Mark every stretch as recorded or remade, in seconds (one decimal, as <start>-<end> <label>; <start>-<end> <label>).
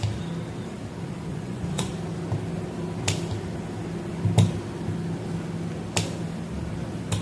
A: 0.0-1.3 recorded; 1.3-1.9 remade; 1.9-7.2 recorded